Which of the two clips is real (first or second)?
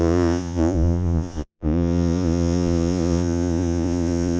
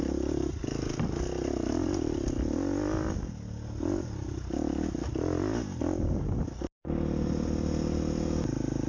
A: second